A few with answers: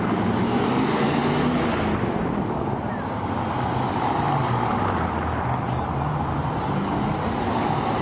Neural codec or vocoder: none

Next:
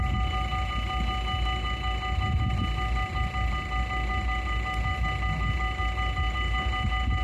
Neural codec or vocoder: none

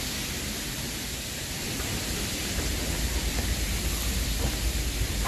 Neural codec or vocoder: vocoder, BigVGAN v2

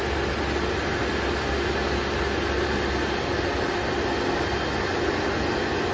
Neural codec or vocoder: none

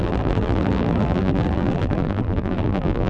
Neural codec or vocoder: vocoder, BigVGAN v2